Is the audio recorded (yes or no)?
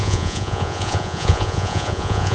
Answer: no